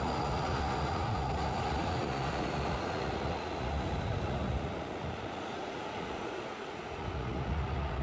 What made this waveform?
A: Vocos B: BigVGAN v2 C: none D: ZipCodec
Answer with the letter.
A